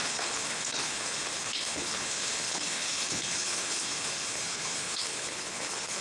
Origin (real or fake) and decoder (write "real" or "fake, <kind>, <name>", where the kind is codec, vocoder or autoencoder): fake, codec, HILCodec